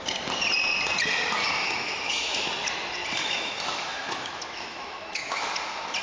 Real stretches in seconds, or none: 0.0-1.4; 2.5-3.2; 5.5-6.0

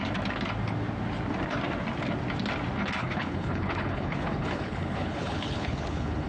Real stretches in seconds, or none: 0.0-3.0

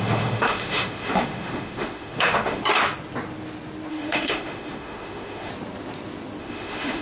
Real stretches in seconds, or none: 2.6-3.9; 5.5-6.4

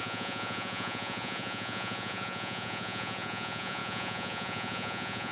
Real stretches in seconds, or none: none

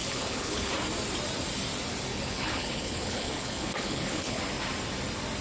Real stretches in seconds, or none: 0.7-2.1; 4.4-5.4

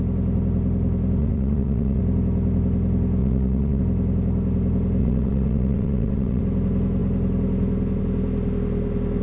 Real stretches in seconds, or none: 0.0-1.2; 2.0-3.2; 3.8-5.0; 6.4-9.2